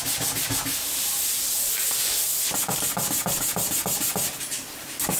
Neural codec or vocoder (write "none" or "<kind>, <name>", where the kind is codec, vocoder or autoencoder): none